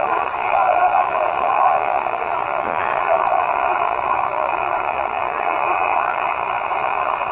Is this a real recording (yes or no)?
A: no